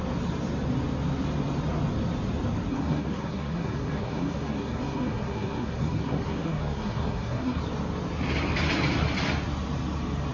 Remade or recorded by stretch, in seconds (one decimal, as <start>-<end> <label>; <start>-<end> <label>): 0.0-2.7 recorded; 2.7-7.6 remade; 7.6-10.3 recorded